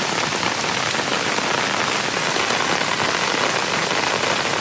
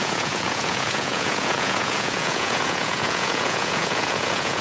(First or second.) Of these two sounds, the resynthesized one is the second